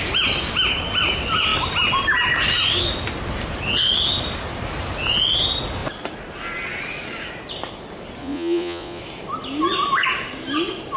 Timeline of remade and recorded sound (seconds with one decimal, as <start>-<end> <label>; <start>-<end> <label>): 0.0-8.2 recorded; 8.2-9.0 remade; 9.0-11.0 recorded